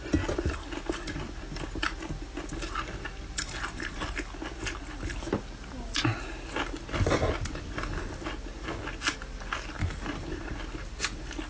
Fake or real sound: real